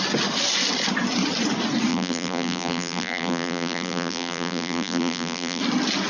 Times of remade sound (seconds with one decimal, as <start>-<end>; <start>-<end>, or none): 1.9-5.6

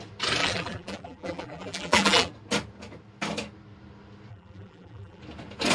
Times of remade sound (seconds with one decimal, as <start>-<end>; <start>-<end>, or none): 0.4-2.3; 4.3-5.2

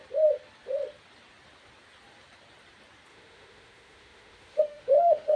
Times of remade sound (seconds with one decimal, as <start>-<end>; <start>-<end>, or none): 3.1-5.4

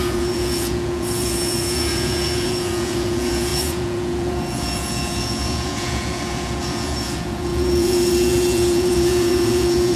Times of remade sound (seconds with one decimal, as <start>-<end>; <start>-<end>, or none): 0.0-10.0

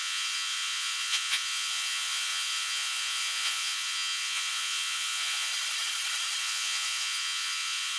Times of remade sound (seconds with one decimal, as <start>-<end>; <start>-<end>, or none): 0.0-5.5; 6.4-8.0

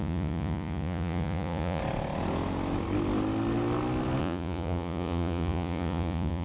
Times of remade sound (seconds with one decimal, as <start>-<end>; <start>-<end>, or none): 0.0-1.8; 4.2-6.4

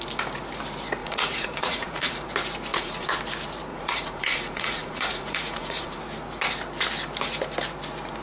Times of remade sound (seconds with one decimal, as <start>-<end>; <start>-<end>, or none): 1.0-2.3; 2.7-3.2; 3.7-6.0